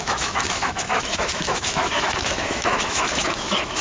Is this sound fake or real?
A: fake